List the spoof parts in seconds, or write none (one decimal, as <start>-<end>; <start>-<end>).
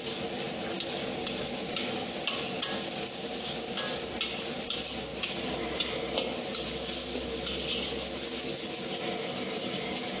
1.0-2.2